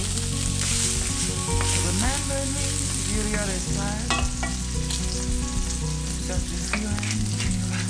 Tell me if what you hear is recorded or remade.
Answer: recorded